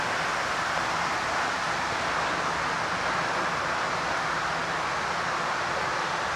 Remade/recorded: recorded